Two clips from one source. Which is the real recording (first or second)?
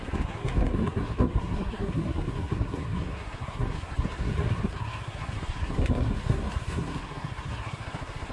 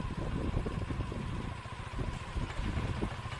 second